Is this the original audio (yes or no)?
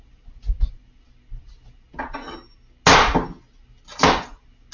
yes